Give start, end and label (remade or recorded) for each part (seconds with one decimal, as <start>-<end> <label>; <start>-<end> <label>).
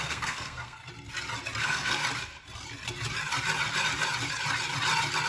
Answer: 0.0-0.8 remade; 0.8-1.6 recorded; 1.6-2.0 remade; 2.0-5.3 recorded